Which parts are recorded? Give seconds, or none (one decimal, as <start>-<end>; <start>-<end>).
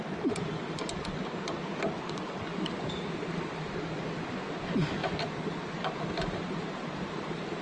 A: 0.0-2.5; 3.7-5.0